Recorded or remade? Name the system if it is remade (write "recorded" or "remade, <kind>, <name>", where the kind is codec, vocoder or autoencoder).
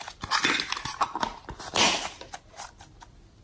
recorded